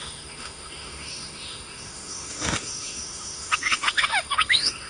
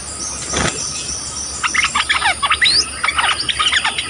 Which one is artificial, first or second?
first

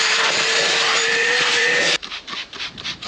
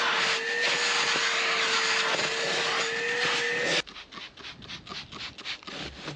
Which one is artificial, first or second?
first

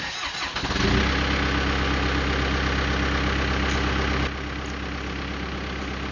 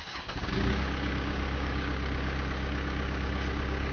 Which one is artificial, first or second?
second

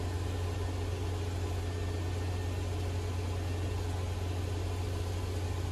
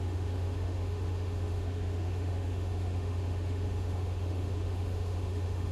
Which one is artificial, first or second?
second